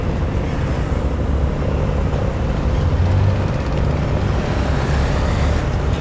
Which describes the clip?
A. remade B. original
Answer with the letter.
B